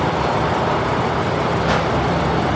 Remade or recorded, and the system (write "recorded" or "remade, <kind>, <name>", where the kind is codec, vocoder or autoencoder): remade, vocoder, BigVGAN v2